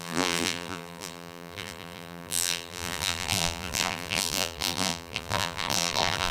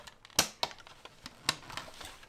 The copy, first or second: first